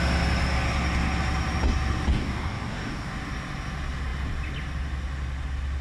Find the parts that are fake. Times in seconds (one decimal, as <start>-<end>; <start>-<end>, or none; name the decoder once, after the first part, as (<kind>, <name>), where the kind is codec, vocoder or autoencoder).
2.1-3.1 (codec, DAC)